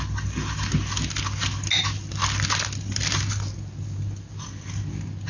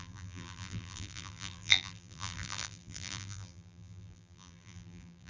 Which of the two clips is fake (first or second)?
second